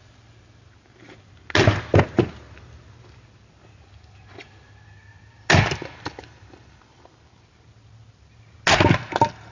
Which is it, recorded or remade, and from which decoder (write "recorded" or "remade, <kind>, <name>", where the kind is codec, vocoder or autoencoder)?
recorded